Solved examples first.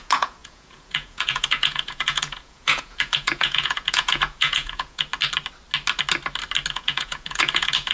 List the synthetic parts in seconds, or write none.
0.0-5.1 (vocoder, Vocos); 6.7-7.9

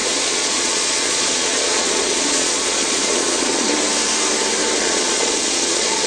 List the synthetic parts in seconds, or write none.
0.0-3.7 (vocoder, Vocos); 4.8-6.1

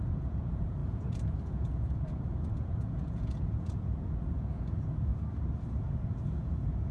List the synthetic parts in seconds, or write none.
0.0-5.1 (vocoder, Vocos); 5.8-6.9

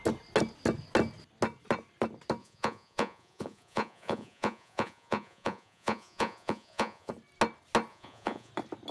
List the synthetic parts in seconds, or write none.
2.4-7.1 (vocoder, Vocos); 7.9-8.5

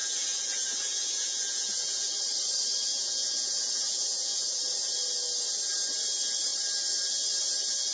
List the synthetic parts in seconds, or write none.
0.0-2.1 (vocoder, Vocos); 2.9-4.6

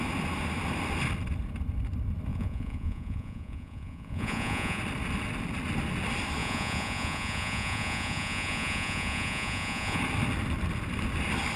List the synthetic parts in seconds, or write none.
2.3-4.8 (vocoder, Vocos); 6.4-10.0

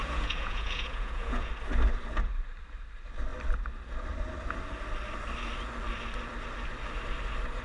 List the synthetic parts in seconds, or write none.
0.0-1.5 (vocoder, Vocos)

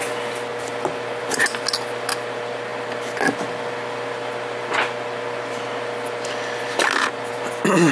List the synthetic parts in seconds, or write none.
none